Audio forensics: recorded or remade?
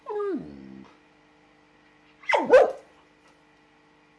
recorded